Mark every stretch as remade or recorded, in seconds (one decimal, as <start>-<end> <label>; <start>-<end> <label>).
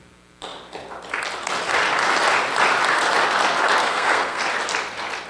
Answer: 0.0-3.8 recorded; 3.8-4.4 remade; 4.4-5.3 recorded